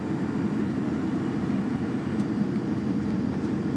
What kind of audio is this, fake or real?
real